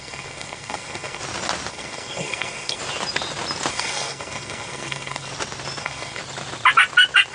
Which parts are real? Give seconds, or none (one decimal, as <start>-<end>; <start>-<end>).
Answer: 1.2-1.7; 2.8-3.7; 5.3-5.8; 6.2-7.3